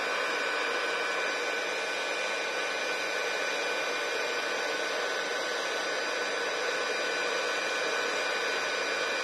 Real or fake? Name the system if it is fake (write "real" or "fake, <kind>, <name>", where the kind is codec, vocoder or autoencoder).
real